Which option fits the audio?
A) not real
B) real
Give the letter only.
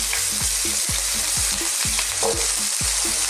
B